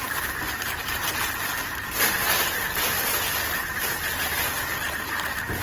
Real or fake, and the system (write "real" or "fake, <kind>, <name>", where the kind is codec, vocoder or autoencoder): real